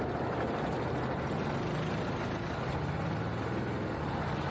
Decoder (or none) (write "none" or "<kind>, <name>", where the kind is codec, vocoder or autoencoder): none